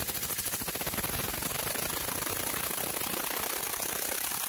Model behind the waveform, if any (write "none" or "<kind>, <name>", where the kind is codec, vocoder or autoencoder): none